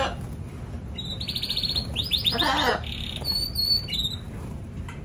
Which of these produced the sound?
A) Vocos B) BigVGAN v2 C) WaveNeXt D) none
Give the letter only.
D